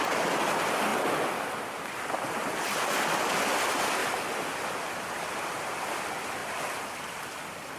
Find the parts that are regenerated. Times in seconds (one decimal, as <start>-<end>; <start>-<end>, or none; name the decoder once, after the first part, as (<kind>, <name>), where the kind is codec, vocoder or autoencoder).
none